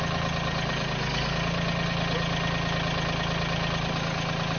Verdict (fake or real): real